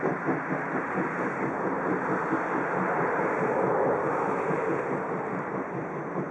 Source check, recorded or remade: recorded